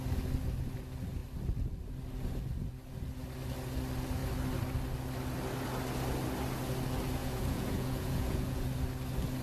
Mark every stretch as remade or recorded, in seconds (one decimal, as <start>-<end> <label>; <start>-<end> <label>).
0.0-7.2 recorded; 7.2-8.6 remade; 8.6-9.4 recorded